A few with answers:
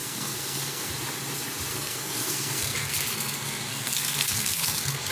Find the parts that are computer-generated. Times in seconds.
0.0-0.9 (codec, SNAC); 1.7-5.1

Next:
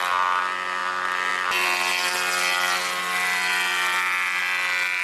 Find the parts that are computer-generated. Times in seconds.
none

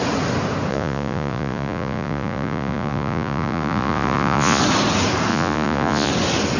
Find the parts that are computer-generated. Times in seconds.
0.7-4.6 (vocoder, Vocos); 5.3-6.1